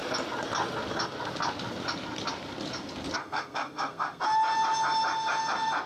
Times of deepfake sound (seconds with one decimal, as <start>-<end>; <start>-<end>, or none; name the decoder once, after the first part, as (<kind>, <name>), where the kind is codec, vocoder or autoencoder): 3.2-4.2 (codec, SNAC)